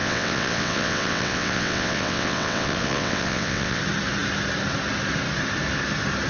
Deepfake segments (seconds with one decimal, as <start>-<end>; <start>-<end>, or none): 0.0-3.8